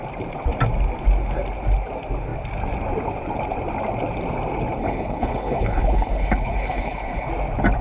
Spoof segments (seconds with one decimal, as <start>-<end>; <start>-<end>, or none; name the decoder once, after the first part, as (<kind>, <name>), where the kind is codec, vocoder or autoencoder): 4.8-7.3 (codec, HILCodec)